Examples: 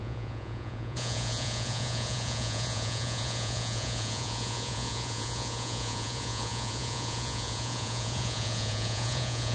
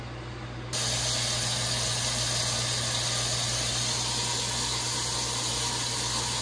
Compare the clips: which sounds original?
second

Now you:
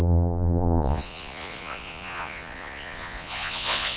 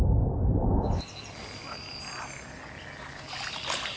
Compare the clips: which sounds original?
second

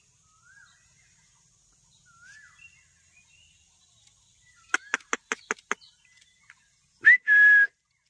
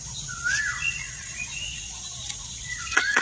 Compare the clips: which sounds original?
first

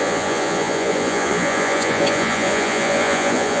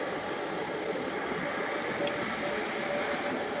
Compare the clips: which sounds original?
second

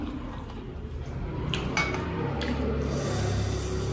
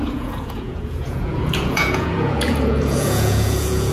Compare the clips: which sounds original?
first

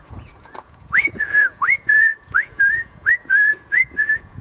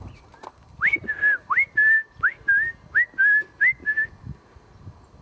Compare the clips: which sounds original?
second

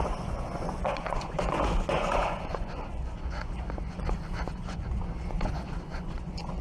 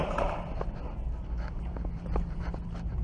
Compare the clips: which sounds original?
second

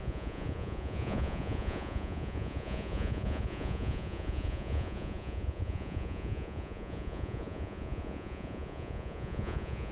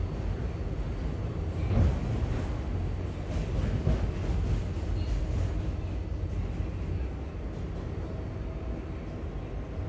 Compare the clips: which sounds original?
second